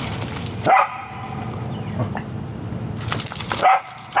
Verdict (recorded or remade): recorded